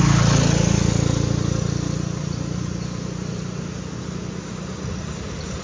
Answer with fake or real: real